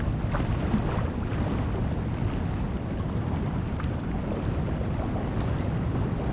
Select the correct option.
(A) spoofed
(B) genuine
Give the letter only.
B